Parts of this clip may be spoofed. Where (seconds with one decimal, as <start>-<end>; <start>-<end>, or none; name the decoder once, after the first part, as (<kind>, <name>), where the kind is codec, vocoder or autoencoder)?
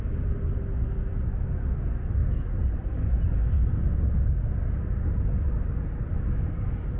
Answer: none